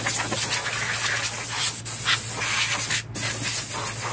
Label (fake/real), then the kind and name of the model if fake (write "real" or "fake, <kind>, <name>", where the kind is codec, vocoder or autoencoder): real